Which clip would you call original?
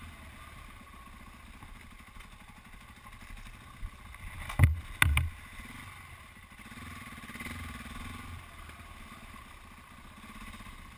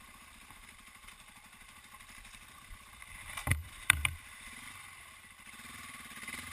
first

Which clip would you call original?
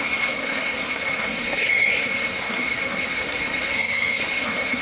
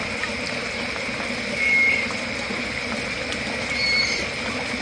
second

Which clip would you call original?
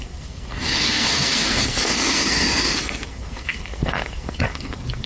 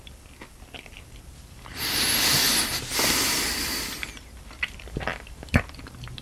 second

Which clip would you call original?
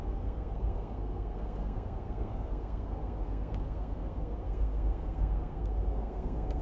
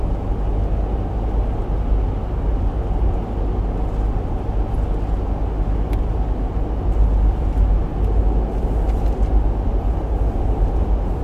second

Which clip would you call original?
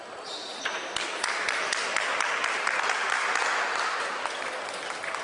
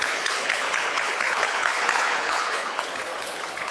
first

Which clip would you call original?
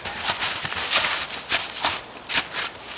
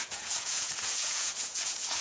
first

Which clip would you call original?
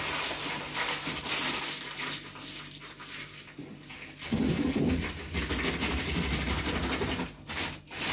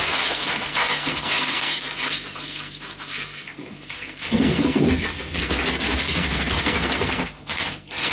first